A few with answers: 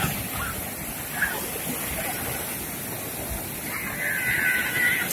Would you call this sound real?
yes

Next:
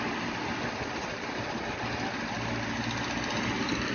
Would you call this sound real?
yes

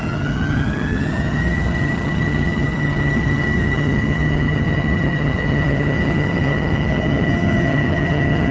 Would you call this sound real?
no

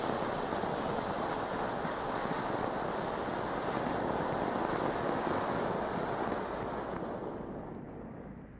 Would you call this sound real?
yes